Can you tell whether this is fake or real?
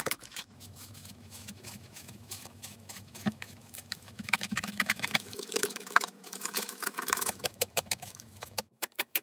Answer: fake